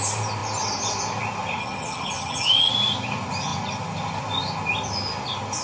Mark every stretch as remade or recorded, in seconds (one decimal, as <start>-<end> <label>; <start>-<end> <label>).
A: 0.0-1.6 recorded; 1.6-2.7 remade; 2.7-5.6 recorded